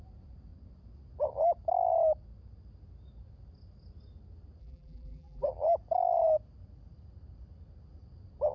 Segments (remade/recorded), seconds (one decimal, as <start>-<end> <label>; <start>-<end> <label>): 0.0-4.6 recorded; 4.6-5.5 remade; 5.5-8.5 recorded